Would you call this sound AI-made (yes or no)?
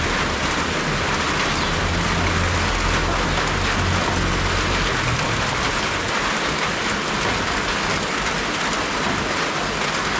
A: no